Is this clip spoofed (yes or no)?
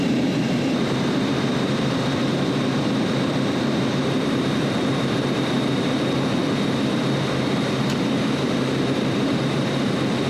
yes